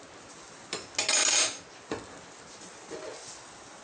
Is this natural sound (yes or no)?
yes